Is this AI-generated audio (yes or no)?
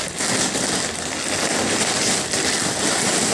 no